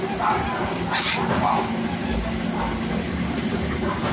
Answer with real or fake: real